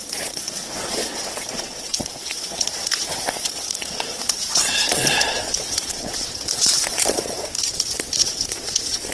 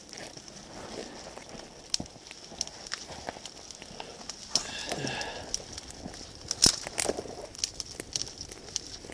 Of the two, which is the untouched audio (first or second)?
second